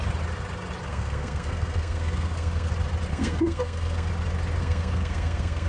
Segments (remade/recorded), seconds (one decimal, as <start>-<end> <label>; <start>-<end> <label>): 0.0-0.9 recorded; 0.9-2.7 remade; 2.7-3.1 recorded; 3.1-4.1 remade; 4.1-4.6 recorded; 4.6-5.7 remade

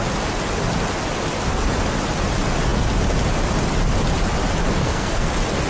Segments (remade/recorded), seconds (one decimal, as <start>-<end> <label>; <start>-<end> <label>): 0.0-4.8 recorded; 4.8-5.3 remade; 5.3-5.7 recorded

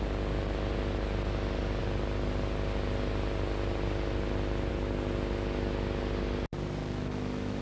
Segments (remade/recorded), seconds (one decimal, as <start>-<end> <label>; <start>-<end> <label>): 0.0-6.8 recorded; 6.8-7.6 remade

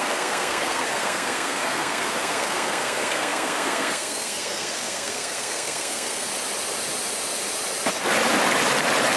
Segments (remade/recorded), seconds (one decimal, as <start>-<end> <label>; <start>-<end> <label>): 0.0-6.3 remade; 6.3-9.2 recorded

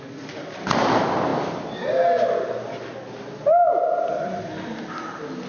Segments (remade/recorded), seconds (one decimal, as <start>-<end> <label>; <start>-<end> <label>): 0.0-5.5 recorded

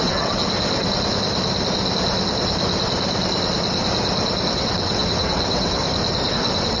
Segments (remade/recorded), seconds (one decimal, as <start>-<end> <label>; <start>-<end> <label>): 0.0-0.4 remade; 0.4-4.5 recorded; 4.5-5.8 remade; 5.8-6.3 recorded; 6.3-6.8 remade

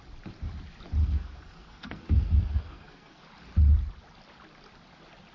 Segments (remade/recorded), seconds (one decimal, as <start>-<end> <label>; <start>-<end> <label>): 0.0-1.0 recorded; 1.0-3.2 remade; 3.2-5.3 recorded